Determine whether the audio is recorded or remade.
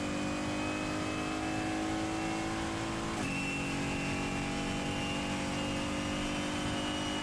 recorded